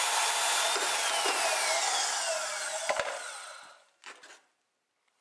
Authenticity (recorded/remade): recorded